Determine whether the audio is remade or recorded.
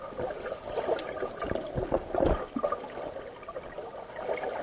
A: recorded